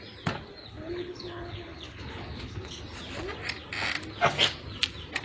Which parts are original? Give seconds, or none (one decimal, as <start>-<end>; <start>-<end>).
0.0-0.6; 2.8-5.2